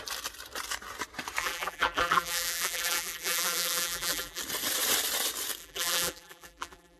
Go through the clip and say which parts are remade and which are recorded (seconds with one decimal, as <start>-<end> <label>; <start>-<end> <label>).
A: 0.0-1.4 recorded; 1.4-4.4 remade; 4.4-5.6 recorded; 5.6-7.0 remade